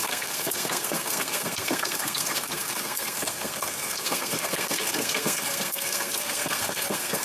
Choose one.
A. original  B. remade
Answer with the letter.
B